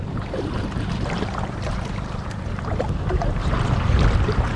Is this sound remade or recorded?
remade